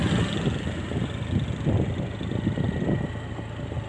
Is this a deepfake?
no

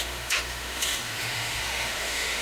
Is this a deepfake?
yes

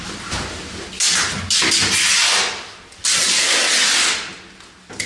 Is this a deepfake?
no